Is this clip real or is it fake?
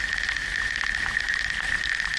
real